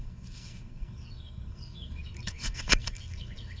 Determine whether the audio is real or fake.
fake